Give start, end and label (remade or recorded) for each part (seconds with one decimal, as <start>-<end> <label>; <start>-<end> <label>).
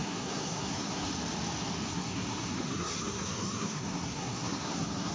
0.0-1.1 remade; 1.1-1.9 recorded; 1.9-5.1 remade